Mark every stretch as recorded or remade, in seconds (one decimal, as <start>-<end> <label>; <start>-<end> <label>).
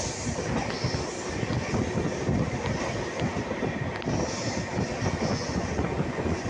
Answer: 0.0-5.3 recorded; 5.3-6.5 remade